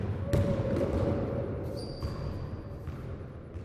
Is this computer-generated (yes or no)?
no